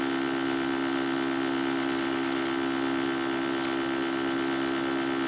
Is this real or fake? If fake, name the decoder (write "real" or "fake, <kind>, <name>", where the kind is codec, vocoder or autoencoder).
real